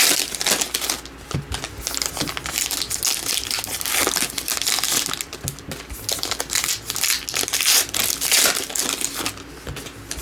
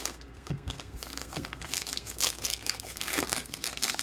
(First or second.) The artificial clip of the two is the second